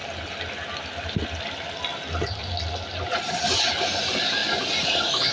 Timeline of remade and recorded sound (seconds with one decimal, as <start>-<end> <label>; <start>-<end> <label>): 0.0-5.3 recorded